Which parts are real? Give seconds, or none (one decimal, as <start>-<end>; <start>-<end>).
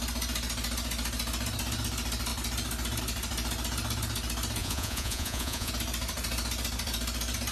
0.0-4.6; 5.7-7.5